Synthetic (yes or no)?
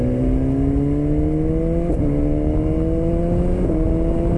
no